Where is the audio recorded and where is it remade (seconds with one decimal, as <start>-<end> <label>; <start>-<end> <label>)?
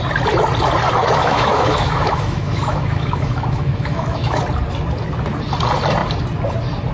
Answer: 0.0-1.0 recorded; 1.0-4.4 remade; 4.4-6.9 recorded